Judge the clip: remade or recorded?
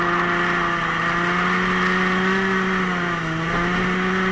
recorded